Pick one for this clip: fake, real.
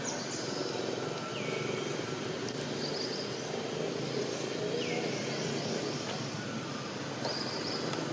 real